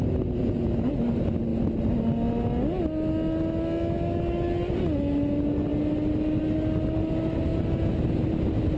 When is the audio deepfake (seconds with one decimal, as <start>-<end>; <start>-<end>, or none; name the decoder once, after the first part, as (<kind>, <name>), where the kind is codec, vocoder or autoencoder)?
0.4-0.9 (vocoder, Vocos)